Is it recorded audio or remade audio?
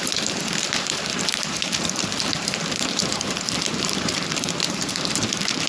remade